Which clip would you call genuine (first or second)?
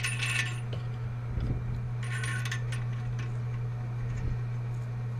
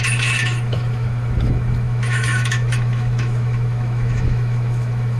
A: first